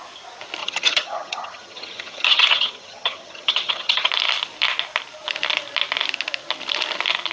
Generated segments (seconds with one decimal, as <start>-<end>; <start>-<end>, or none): 0.6-4.1